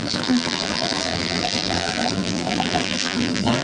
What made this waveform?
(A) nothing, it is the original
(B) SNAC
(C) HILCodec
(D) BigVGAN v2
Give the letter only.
D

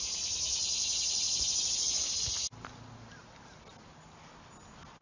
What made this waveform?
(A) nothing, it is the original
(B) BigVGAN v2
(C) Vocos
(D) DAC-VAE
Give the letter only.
A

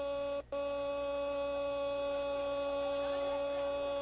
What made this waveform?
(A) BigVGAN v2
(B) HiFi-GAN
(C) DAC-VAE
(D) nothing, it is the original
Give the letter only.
D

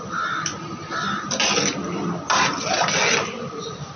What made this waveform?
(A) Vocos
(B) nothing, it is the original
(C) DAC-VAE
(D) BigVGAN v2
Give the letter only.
B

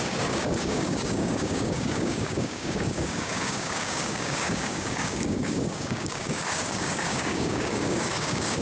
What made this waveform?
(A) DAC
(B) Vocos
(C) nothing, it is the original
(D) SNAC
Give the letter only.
A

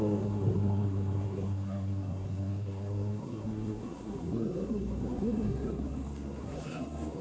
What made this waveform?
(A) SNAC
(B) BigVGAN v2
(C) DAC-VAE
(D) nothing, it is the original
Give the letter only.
A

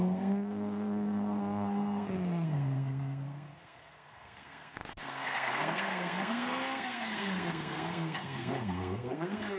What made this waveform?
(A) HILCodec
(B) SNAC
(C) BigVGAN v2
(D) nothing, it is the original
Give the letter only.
B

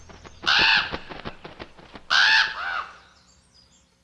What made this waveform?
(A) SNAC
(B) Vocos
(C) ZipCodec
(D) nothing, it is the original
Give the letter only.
D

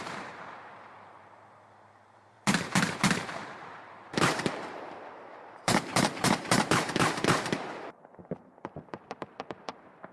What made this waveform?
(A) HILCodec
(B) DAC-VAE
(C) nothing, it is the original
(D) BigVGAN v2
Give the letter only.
D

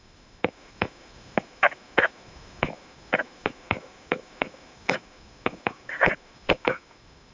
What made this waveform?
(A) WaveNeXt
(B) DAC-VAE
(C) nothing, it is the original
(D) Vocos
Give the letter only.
B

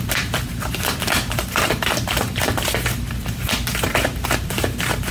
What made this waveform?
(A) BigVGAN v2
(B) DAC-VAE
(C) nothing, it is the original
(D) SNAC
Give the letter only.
A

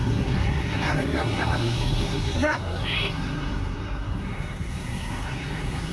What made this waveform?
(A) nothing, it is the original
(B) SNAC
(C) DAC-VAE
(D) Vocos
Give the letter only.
B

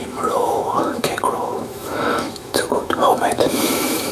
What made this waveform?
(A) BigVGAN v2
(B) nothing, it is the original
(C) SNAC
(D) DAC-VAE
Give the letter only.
D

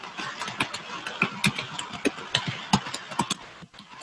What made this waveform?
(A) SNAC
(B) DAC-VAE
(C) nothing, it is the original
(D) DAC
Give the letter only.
C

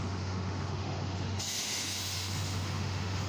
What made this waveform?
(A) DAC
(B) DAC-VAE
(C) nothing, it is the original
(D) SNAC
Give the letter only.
B